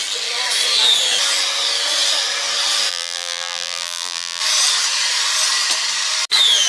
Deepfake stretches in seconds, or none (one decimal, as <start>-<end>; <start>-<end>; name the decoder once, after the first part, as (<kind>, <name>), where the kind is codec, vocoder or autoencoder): 2.9-4.4 (vocoder, BigVGAN v2)